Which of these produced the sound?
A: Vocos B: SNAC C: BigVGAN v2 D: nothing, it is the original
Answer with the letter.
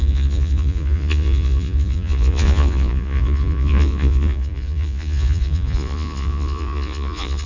A